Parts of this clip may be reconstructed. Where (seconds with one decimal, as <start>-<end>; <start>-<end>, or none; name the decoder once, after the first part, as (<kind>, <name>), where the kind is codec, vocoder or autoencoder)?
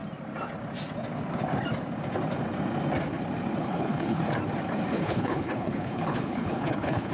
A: 3.6-4.2 (codec, HILCodec); 4.9-7.1